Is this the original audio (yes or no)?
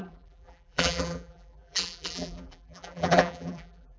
no